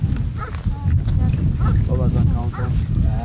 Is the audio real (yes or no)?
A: yes